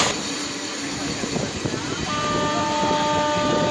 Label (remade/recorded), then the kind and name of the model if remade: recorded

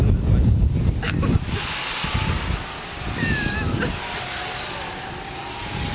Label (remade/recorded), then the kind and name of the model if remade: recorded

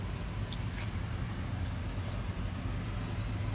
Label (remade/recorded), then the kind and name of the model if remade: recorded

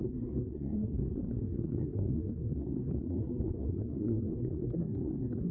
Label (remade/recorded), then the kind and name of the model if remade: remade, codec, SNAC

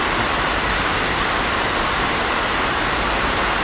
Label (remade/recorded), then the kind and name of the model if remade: recorded